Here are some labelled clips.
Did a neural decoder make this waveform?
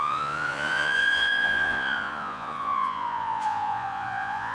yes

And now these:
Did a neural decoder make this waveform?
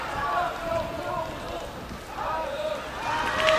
no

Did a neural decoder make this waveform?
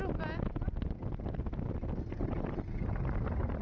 no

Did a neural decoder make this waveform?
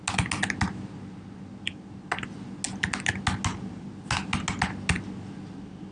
no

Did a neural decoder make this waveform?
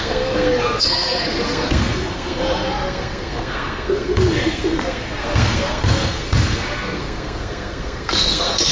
yes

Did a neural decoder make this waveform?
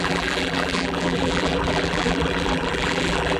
yes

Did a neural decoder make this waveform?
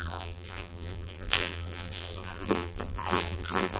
yes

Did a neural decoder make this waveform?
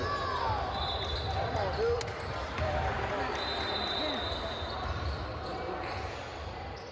no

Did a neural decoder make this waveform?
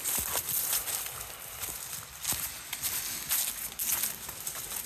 no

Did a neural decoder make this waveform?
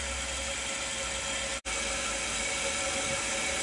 no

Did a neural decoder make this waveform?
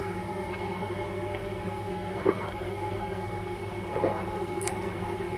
yes